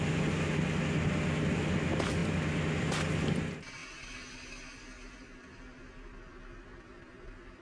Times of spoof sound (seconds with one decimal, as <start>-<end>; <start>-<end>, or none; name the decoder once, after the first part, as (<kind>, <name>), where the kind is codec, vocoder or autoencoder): none